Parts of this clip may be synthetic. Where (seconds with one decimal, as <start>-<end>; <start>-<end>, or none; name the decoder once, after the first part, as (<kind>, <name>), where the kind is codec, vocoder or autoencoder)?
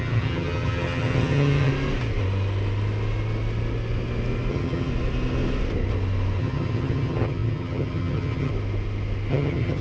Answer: 0.0-1.7 (vocoder, HiFi-GAN); 4.5-4.9; 6.4-8.5; 9.3-9.8